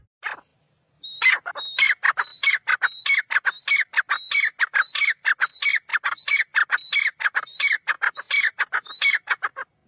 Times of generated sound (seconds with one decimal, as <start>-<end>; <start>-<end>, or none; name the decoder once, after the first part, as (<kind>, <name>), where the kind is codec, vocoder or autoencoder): none